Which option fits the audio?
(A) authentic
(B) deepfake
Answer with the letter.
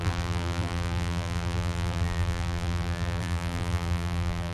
B